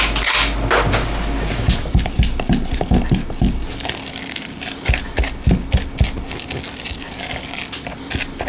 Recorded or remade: recorded